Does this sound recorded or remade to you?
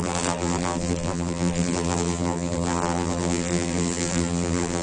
remade